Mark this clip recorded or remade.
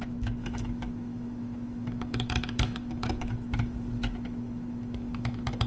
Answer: remade